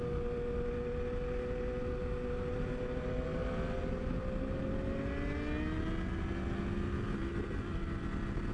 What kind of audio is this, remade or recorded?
recorded